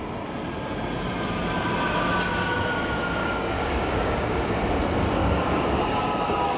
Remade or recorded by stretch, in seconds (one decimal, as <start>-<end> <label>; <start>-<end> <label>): 0.0-3.2 recorded; 3.2-4.5 remade; 4.5-5.2 recorded; 5.2-6.6 remade